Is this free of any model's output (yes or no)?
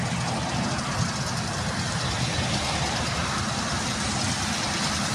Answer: yes